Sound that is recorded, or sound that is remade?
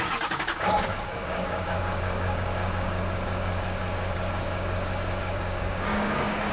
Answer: remade